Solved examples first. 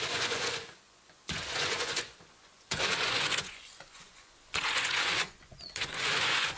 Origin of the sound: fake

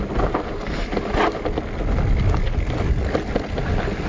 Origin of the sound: real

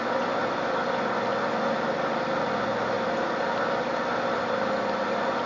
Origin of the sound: real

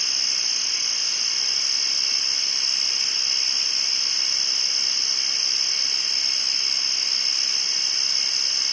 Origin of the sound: real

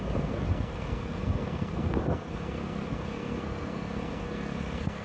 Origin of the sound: fake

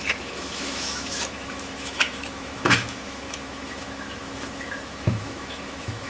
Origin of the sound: fake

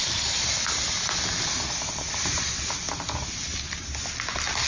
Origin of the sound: real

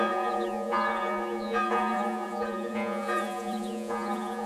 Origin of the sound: fake